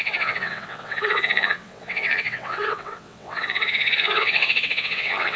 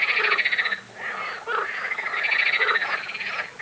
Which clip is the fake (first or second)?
first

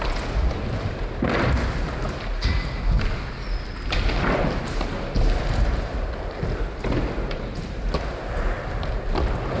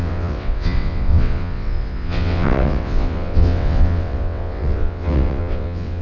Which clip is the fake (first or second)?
second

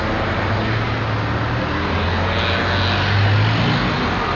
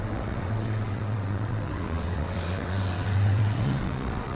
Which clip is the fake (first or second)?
second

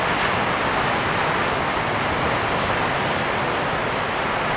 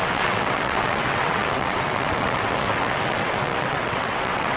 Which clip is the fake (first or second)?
second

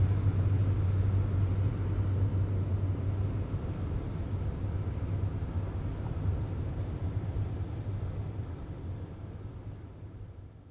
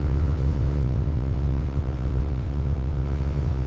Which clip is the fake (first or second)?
second